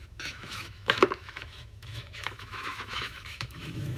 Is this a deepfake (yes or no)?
yes